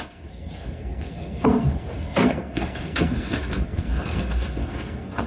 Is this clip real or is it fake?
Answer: fake